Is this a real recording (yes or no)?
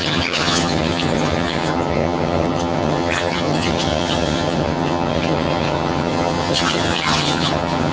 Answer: no